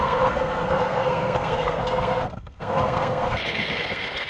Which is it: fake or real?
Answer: fake